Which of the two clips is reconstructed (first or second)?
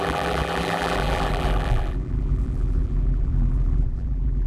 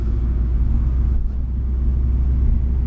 first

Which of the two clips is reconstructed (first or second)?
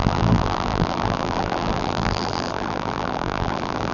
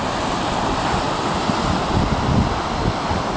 first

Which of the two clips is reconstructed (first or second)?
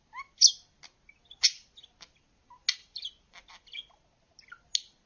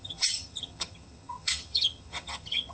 second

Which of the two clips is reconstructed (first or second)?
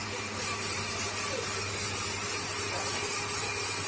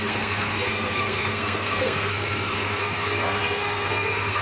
second